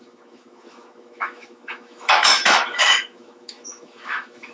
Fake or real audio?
fake